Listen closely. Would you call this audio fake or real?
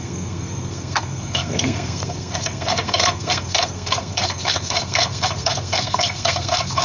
fake